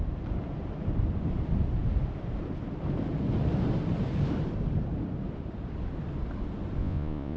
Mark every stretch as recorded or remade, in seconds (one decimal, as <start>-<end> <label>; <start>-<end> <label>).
0.0-6.8 recorded; 6.8-7.4 remade